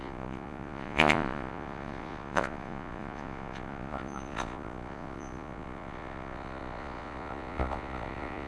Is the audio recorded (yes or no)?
no